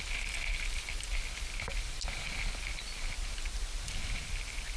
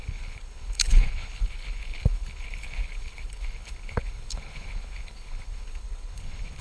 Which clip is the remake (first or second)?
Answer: second